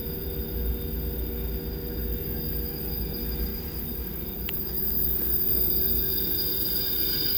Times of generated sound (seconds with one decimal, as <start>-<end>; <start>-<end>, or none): 3.5-5.5